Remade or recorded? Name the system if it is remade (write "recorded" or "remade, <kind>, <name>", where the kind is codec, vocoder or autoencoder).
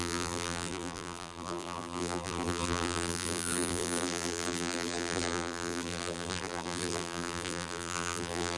remade, vocoder, BigVGAN v2